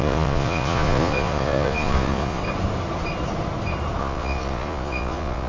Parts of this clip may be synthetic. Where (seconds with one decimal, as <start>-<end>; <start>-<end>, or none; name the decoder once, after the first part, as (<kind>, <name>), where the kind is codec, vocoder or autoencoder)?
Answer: 0.0-2.4 (vocoder, Vocos); 4.0-5.5